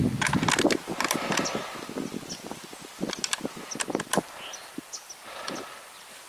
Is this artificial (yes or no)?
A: no